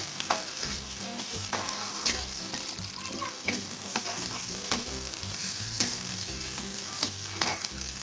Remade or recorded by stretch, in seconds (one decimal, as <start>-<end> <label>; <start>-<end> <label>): 0.0-2.5 remade; 2.5-3.3 recorded; 3.3-8.0 remade